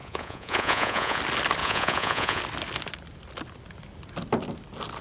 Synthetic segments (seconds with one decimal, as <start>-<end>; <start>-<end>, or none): 0.0-1.2; 1.6-2.4